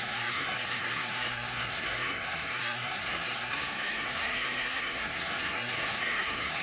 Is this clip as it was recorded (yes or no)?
no